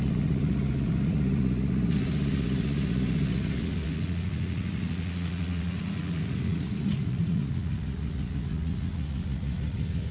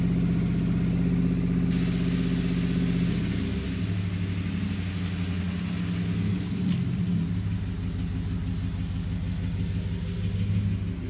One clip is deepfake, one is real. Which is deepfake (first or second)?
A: first